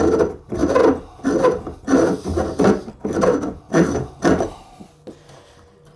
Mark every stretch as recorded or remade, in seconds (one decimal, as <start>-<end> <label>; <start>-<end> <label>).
0.0-6.0 recorded